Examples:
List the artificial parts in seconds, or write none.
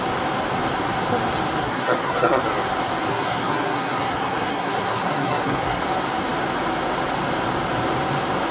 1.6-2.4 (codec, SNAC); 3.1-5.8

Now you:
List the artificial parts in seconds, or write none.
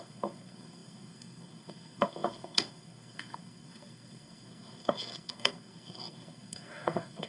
0.0-7.3 (codec, SNAC)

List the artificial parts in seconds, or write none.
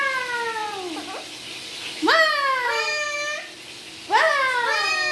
none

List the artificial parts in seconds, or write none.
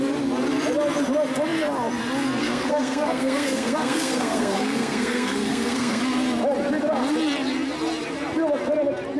2.4-6.0 (codec, SNAC)